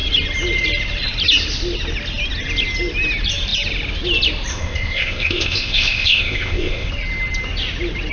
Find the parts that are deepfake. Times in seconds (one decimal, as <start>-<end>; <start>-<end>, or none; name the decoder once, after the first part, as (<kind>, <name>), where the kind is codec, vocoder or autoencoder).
4.5-6.9 (codec, ZipCodec)